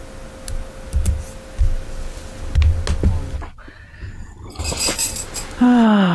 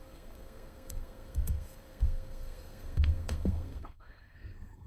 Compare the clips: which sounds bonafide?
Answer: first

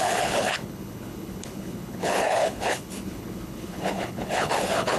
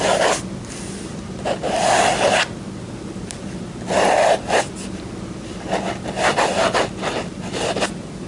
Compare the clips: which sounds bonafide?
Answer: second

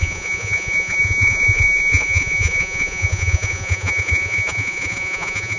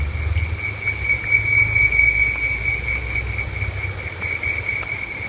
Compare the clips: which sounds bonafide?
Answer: second